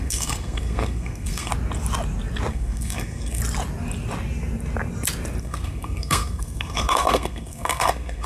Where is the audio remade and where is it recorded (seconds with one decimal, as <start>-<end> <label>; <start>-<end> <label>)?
0.0-1.5 remade; 1.5-2.5 recorded; 2.5-3.4 remade; 3.4-5.4 recorded; 5.4-8.3 remade

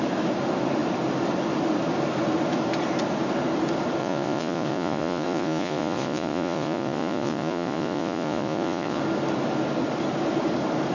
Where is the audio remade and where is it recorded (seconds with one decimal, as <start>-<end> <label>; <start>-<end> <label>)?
0.0-4.0 recorded; 4.0-9.0 remade; 9.0-10.9 recorded

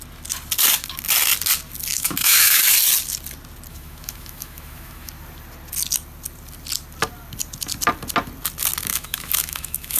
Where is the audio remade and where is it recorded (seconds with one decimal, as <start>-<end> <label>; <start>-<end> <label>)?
0.0-1.9 recorded; 1.9-2.6 remade; 2.6-3.7 recorded; 3.7-5.1 remade; 5.1-8.9 recorded; 8.9-10.0 remade